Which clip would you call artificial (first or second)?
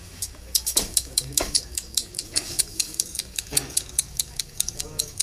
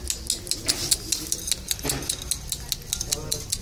first